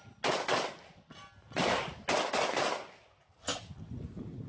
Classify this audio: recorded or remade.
recorded